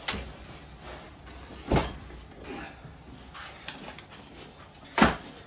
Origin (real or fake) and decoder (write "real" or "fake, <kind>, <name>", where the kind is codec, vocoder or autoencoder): real